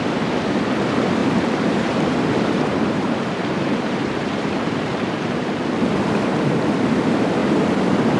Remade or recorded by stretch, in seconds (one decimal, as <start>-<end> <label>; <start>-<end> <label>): 0.0-1.2 recorded; 1.2-5.6 remade; 5.6-8.2 recorded